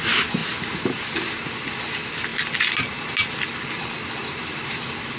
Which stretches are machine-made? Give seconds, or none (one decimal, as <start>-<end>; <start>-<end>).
0.4-1.7; 4.2-4.8